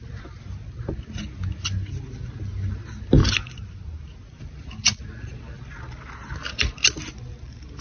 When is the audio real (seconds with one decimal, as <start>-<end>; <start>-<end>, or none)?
0.0-7.8